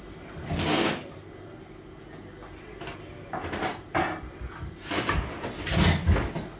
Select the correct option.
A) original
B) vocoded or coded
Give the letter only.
A